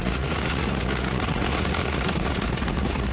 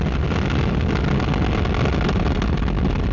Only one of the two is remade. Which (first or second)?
first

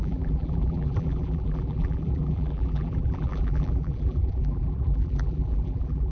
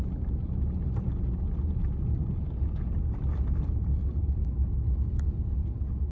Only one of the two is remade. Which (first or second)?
first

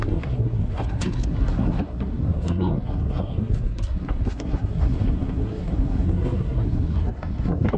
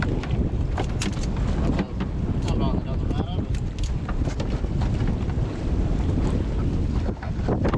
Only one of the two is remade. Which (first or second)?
first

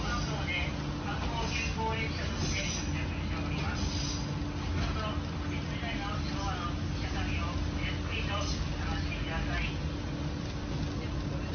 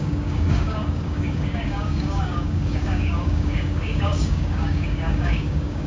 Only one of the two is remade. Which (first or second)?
second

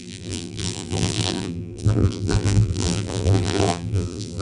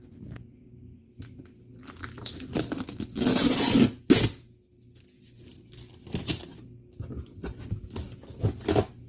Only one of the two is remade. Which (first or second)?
first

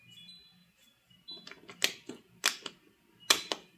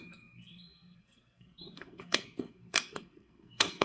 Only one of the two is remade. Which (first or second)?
second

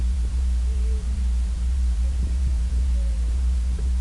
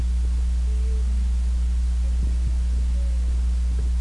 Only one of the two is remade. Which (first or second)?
first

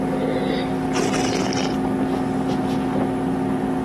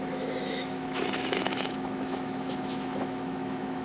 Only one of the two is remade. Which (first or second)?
second